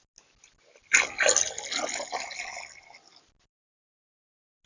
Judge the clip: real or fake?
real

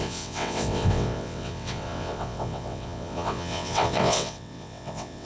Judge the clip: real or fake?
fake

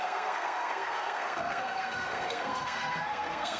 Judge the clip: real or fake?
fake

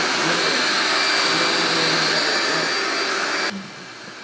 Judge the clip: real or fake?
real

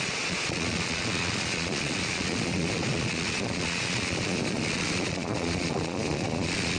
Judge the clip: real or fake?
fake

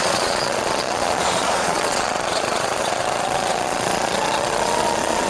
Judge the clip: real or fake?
fake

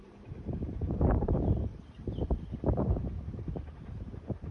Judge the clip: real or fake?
fake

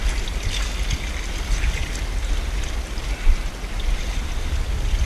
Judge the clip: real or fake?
real